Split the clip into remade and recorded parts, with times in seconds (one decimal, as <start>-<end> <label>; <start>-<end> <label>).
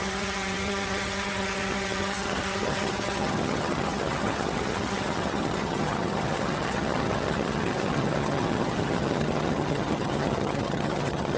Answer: 0.0-11.4 remade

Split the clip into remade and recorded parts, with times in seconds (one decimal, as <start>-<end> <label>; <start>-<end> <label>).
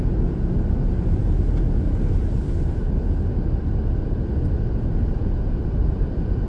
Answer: 0.0-6.5 recorded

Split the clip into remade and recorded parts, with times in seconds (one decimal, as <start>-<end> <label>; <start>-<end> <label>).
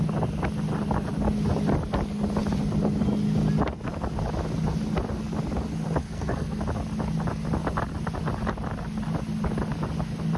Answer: 0.0-6.0 recorded; 6.0-6.6 remade; 6.6-10.4 recorded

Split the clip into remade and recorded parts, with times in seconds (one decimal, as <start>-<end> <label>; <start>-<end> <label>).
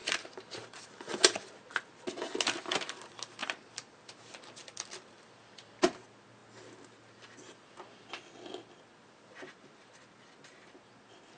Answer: 0.0-1.5 remade; 1.5-3.4 recorded; 3.4-4.1 remade; 4.1-4.6 recorded; 4.6-5.7 remade; 5.7-11.4 recorded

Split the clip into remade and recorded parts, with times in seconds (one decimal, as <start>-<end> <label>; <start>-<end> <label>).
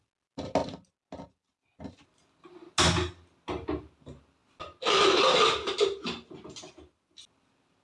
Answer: 0.0-7.8 recorded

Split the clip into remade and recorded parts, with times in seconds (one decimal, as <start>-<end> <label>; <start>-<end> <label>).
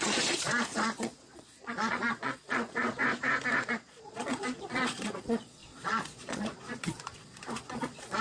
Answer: 0.0-3.0 remade; 3.0-3.6 recorded; 3.6-8.2 remade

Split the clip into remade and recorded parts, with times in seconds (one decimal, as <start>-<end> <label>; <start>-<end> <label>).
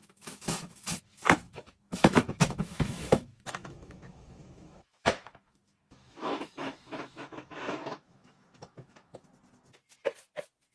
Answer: 0.0-9.3 remade; 9.3-10.7 recorded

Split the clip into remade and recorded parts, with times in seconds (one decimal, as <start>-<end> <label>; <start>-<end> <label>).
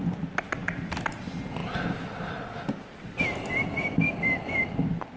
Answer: 0.0-5.2 recorded